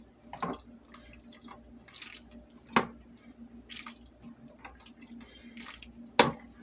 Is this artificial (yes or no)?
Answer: no